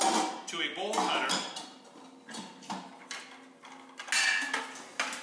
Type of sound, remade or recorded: recorded